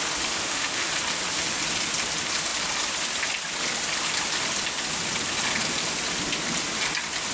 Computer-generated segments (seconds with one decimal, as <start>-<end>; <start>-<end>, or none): 0.4-0.9